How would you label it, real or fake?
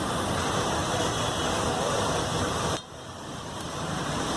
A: fake